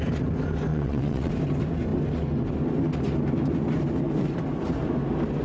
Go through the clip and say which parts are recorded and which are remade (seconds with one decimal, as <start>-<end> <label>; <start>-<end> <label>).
0.0-0.7 recorded; 0.7-1.3 remade; 1.3-5.4 recorded